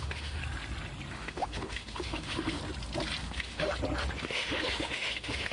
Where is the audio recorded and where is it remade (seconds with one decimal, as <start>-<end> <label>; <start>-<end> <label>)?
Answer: 0.0-0.4 remade; 0.4-1.1 recorded; 1.1-2.6 remade; 2.6-3.2 recorded; 3.2-3.7 remade; 3.7-4.2 recorded; 4.2-5.5 remade